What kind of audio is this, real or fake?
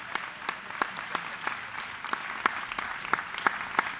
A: real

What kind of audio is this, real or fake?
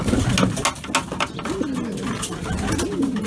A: real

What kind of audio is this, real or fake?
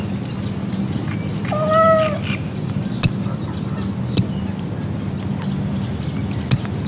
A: real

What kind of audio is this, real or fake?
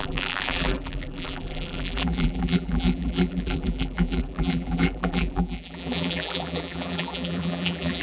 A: fake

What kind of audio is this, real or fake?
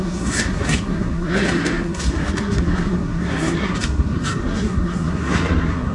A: fake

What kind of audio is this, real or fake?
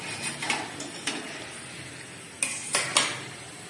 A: real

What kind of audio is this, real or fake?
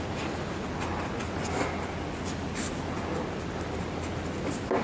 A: real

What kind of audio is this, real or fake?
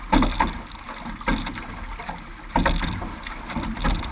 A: fake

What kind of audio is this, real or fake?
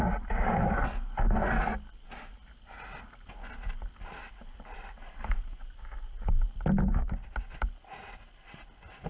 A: real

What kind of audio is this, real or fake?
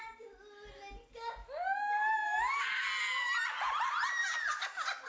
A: real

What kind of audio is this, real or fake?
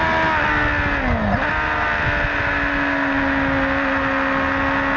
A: real